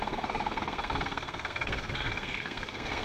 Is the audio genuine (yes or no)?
no